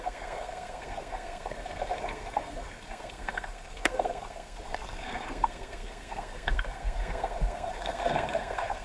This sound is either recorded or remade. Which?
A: remade